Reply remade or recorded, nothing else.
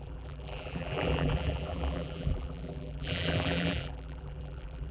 remade